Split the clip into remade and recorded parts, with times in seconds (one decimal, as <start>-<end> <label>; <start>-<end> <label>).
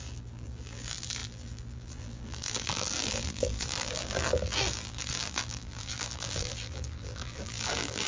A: 0.0-8.1 remade